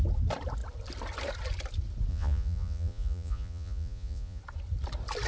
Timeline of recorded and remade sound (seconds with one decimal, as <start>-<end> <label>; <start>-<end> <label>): 0.0-2.1 recorded; 2.1-4.4 remade; 4.4-5.3 recorded

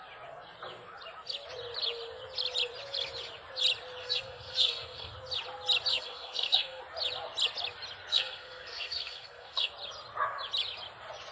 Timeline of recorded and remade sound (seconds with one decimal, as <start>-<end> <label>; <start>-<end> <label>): 0.0-4.0 recorded; 4.0-5.1 remade; 5.1-5.9 recorded; 5.9-6.8 remade; 6.8-8.1 recorded; 8.1-9.7 remade; 9.7-11.3 recorded